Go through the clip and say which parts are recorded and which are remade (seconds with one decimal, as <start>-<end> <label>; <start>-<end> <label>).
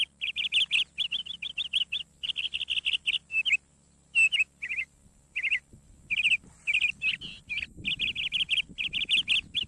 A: 0.0-9.7 recorded